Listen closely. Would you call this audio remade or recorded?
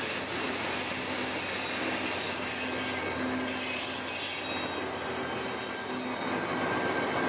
recorded